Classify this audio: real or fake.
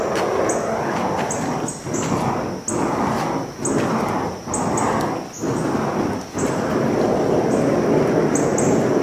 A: real